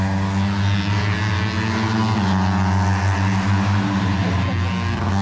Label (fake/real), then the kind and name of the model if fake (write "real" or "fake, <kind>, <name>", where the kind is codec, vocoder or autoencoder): real